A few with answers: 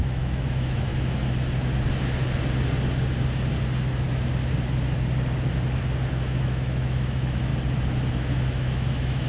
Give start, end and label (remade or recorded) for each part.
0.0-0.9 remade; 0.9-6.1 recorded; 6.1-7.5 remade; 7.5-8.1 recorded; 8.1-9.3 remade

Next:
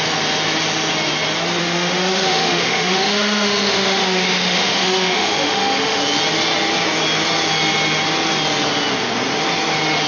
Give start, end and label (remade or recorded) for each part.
0.0-1.6 recorded; 1.6-6.0 remade; 6.0-10.1 recorded

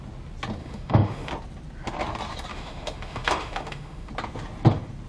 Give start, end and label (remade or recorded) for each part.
0.0-0.6 recorded; 0.6-1.3 remade; 1.3-2.5 recorded; 2.5-4.1 remade; 4.1-5.1 recorded

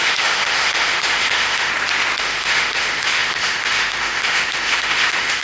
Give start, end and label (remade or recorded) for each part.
0.0-1.7 remade; 1.7-2.2 recorded; 2.2-5.4 remade

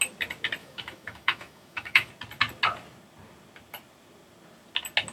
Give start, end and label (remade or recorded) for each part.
0.0-0.6 recorded; 0.6-2.1 remade; 2.1-5.1 recorded

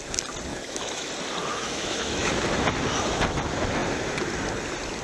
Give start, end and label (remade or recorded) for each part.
0.0-0.5 recorded; 0.5-1.1 remade; 1.1-1.5 recorded; 1.5-2.3 remade; 2.3-5.0 recorded

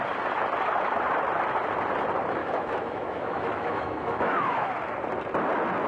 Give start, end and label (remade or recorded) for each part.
0.0-2.4 recorded; 2.4-4.7 remade; 4.7-5.9 recorded

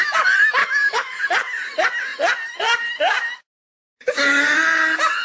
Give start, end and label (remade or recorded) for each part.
0.0-0.6 recorded; 0.6-1.2 remade; 1.2-5.2 recorded